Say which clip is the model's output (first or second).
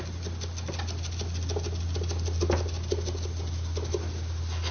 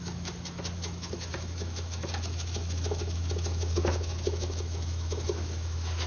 second